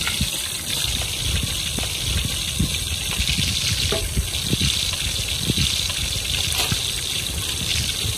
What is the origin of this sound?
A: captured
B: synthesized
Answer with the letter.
A